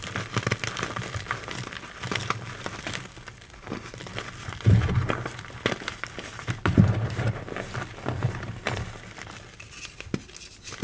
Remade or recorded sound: recorded